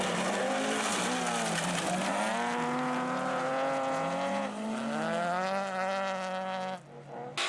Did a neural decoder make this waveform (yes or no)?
no